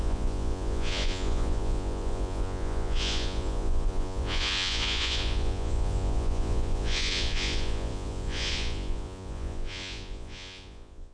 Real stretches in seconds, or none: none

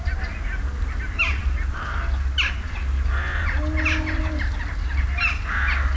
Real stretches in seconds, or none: 0.0-6.0

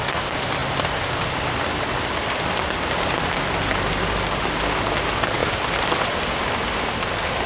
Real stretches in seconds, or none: 0.0-7.5

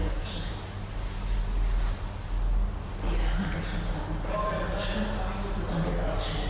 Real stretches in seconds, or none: 0.5-6.5